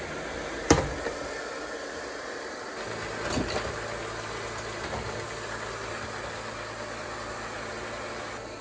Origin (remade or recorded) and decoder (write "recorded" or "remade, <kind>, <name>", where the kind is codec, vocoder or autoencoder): recorded